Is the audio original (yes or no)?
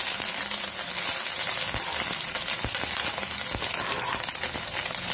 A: yes